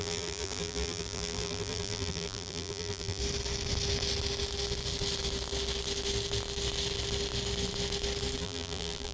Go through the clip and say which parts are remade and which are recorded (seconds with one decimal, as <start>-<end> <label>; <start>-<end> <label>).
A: 0.0-3.2 remade; 3.2-8.4 recorded; 8.4-9.1 remade